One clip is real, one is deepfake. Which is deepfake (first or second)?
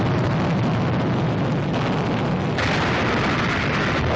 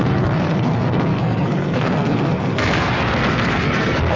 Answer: second